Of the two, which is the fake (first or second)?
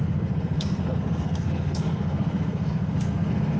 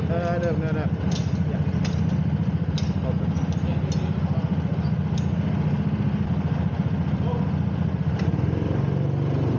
first